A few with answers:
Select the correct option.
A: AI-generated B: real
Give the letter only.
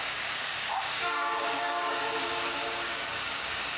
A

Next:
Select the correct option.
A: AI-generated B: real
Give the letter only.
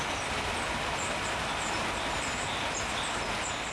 B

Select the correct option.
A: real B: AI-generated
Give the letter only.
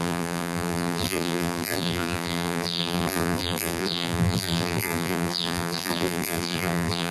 B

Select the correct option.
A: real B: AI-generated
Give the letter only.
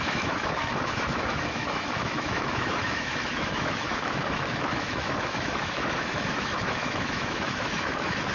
B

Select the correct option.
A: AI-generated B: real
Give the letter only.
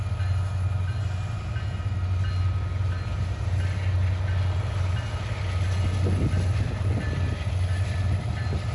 B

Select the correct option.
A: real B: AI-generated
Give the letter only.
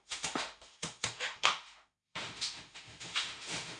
B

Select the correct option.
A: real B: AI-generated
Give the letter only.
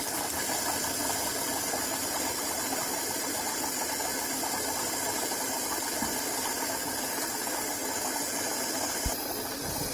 A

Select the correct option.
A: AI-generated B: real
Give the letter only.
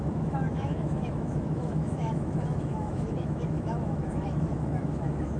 A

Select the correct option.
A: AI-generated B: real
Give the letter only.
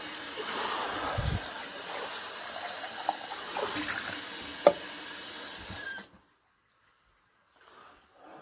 B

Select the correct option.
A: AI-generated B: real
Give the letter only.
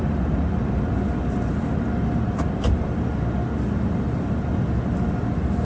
B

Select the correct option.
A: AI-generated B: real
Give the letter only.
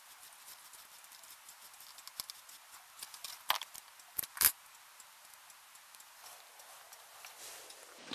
B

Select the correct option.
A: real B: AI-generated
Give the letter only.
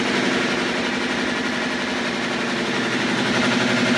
A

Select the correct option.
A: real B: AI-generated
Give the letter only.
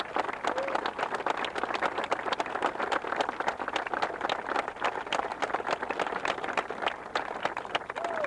A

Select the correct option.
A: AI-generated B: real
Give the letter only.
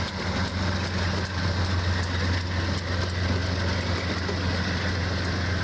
B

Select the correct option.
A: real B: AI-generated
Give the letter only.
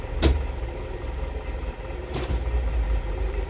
B